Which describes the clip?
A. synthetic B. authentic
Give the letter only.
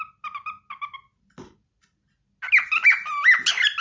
B